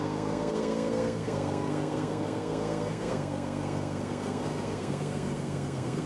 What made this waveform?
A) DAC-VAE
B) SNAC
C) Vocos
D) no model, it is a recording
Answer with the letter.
B